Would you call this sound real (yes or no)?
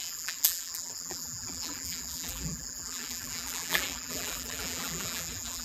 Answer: no